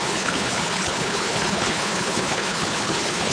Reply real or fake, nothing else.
fake